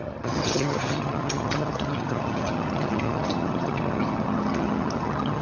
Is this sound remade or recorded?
remade